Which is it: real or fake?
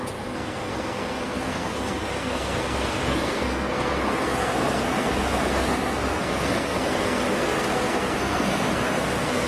fake